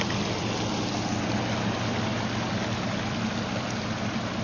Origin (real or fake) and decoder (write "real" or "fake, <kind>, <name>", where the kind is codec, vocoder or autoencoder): real